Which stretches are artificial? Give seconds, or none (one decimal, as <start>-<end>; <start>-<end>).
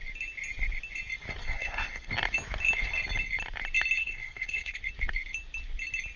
1.4-2.1; 4.0-4.8